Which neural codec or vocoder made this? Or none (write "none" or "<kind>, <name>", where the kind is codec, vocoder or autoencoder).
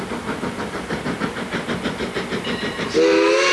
none